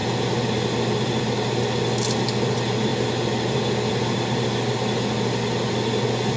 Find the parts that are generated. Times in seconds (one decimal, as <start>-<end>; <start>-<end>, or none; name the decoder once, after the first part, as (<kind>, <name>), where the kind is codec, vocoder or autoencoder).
none